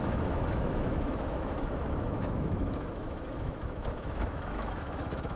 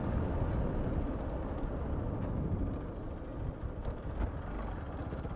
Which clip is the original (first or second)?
second